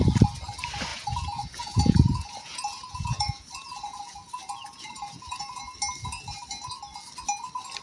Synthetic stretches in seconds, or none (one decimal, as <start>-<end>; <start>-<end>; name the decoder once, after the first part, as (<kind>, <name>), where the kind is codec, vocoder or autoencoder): 0.9-5.6 (vocoder, Vocos)